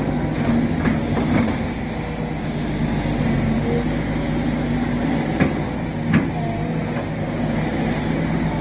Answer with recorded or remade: recorded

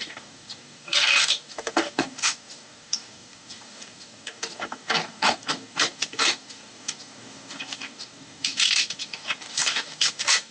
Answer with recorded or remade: remade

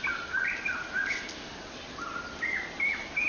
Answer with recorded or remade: recorded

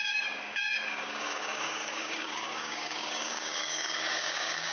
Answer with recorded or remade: remade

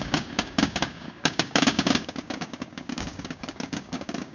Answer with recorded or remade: remade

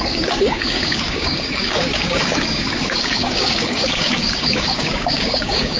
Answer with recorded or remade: remade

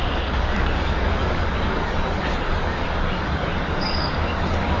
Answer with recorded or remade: remade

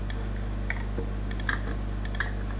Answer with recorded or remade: recorded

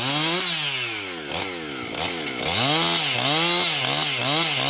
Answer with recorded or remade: recorded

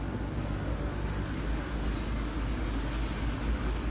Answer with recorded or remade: remade